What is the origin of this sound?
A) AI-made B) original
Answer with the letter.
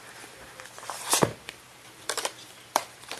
A